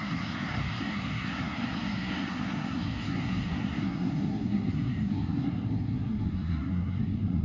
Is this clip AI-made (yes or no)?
yes